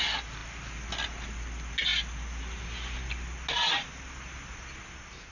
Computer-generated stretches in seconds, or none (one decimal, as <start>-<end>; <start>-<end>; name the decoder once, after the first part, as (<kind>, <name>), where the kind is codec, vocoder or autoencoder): none